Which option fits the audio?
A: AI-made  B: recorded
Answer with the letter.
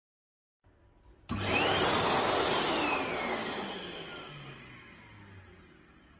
B